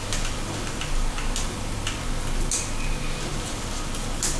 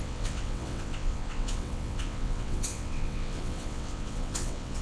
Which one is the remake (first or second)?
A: second